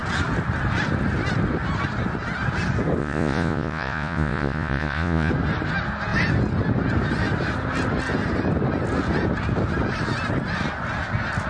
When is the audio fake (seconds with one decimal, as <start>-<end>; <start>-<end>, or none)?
3.0-5.3